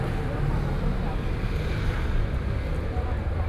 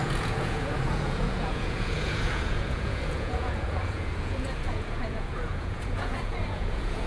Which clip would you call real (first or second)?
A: first